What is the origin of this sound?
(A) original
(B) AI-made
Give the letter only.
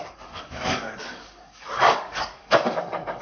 B